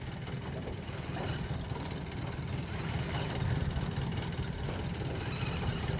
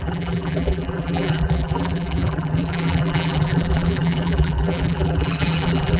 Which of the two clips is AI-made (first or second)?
second